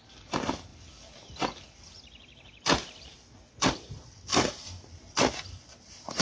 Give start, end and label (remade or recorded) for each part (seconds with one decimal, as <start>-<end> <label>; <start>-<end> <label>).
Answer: 0.0-6.2 recorded